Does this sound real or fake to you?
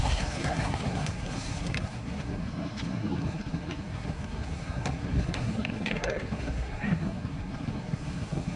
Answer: fake